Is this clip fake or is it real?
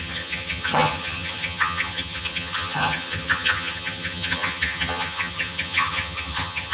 fake